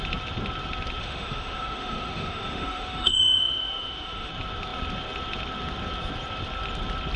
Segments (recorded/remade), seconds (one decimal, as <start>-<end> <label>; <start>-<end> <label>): 0.0-1.0 recorded; 1.0-4.3 remade; 4.3-7.2 recorded